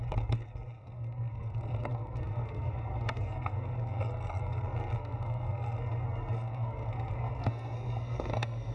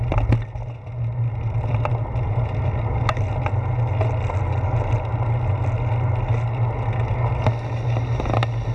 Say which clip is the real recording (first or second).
second